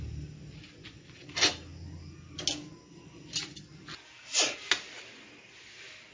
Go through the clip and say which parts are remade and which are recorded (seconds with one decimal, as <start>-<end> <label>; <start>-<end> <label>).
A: 0.0-6.1 recorded